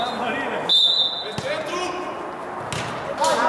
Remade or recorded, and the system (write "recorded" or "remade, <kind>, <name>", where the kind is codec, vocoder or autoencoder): recorded